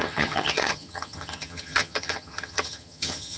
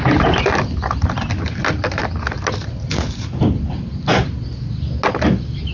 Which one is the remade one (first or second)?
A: first